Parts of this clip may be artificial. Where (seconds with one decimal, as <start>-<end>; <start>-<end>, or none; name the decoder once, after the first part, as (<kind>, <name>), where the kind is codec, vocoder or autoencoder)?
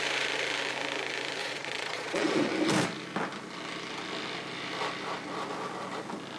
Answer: 1.4-2.5 (vocoder, Vocos)